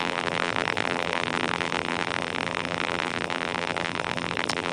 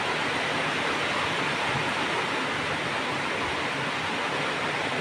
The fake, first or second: first